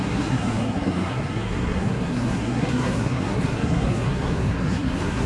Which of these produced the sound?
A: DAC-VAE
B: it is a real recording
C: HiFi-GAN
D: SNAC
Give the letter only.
D